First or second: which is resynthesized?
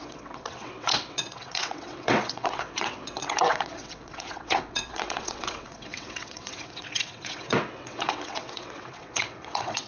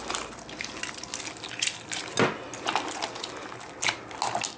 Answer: first